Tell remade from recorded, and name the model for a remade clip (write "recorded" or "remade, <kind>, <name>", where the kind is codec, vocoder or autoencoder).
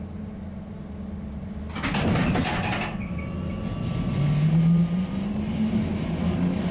recorded